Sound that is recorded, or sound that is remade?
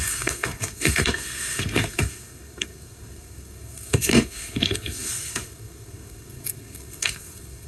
remade